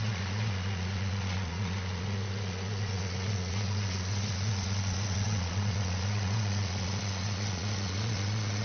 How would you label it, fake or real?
fake